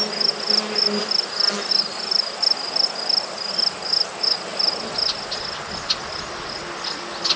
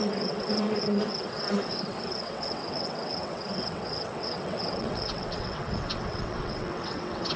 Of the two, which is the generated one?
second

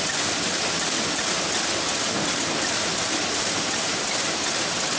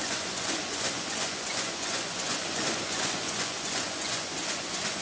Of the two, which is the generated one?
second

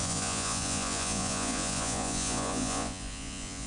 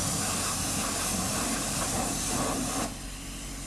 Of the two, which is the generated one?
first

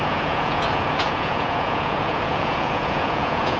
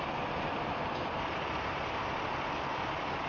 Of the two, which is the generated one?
first